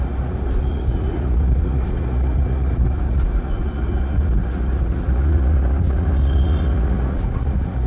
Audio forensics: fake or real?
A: fake